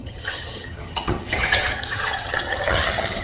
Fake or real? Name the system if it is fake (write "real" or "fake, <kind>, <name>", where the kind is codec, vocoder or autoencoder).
fake, vocoder, HiFi-GAN